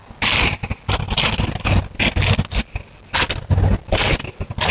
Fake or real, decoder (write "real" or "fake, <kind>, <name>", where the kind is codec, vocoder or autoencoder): real